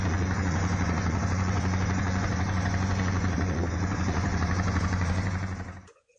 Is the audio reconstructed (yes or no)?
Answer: yes